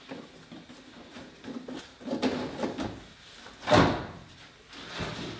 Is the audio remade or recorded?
recorded